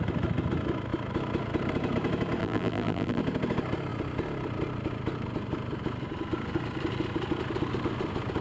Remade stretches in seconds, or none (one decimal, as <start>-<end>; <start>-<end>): 2.4-3.2